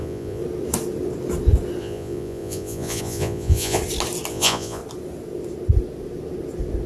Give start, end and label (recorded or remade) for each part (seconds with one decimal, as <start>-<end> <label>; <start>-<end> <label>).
0.0-0.4 remade; 0.4-1.8 recorded; 1.8-3.8 remade; 3.8-4.3 recorded; 4.3-4.8 remade; 4.8-6.9 recorded